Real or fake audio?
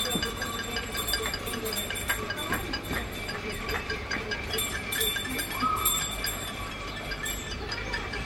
fake